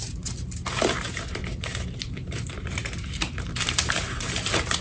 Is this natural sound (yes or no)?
no